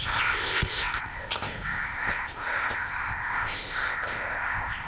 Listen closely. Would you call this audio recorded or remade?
remade